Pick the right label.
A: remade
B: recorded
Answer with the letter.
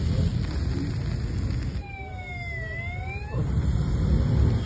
B